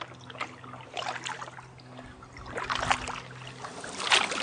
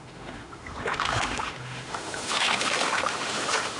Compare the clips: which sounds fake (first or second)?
second